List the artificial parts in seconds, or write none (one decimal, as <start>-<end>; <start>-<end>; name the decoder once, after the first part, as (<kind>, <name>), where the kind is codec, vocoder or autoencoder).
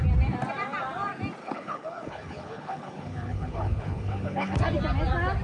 1.4-4.6 (codec, HILCodec)